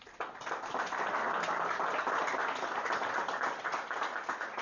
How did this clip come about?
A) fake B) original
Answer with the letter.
B